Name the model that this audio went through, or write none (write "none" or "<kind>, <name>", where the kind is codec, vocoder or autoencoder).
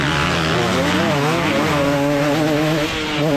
none